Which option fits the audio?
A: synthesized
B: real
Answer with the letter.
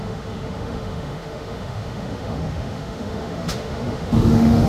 A